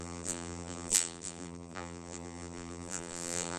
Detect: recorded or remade remade